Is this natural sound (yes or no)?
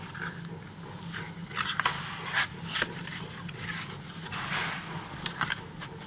yes